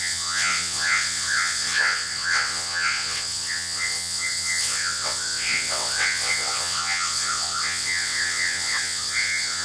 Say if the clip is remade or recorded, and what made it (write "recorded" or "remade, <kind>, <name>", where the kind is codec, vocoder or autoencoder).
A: remade, vocoder, WaveNeXt